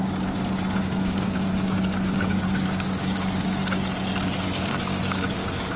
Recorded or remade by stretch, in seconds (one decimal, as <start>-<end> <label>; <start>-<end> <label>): 0.0-0.8 recorded; 0.8-3.6 remade; 3.6-4.4 recorded; 4.4-5.8 remade